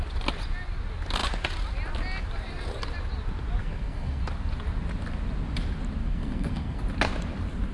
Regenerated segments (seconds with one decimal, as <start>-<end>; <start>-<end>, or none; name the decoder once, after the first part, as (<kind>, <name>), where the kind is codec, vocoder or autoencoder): 3.6-4.2 (codec, SNAC); 6.0-6.8